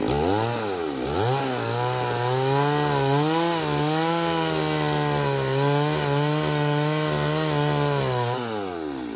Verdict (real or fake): real